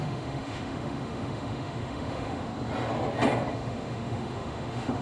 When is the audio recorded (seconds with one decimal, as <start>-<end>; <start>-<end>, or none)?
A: 2.5-3.5